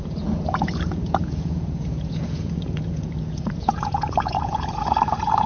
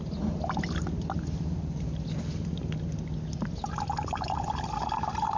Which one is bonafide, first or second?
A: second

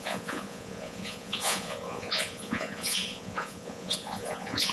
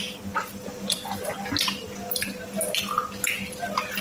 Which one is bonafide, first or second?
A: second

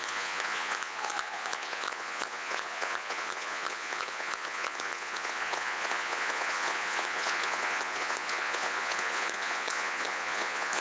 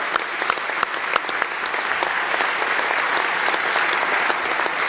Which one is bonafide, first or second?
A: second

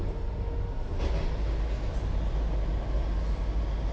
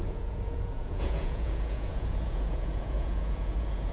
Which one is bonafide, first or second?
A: first